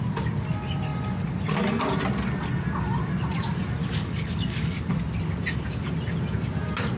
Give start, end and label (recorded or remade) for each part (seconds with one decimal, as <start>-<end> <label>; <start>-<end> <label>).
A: 0.0-3.8 recorded; 3.8-5.0 remade; 5.0-7.0 recorded